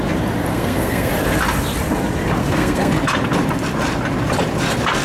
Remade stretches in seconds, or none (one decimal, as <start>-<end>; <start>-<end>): 0.5-1.1; 2.4-2.9